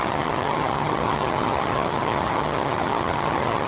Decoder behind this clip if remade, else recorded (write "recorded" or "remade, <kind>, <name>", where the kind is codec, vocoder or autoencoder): remade, vocoder, HiFi-GAN